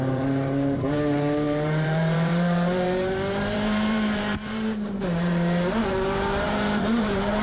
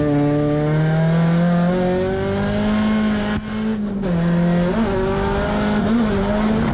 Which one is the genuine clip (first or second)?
second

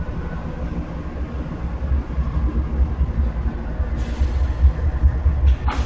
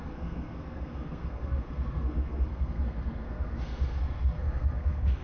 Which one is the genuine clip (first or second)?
first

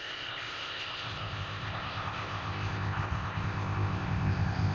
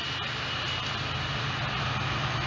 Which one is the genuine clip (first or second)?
second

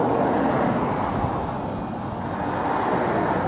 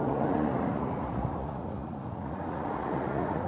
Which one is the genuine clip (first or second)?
first